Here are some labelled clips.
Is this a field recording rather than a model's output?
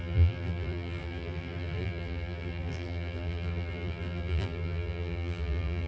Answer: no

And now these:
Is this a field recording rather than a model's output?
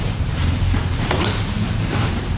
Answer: no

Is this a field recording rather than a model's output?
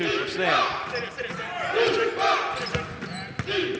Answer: yes